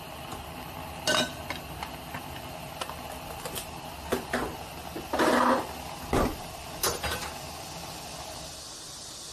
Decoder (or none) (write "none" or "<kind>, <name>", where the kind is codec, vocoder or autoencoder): none